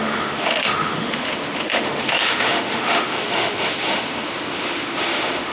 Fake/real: fake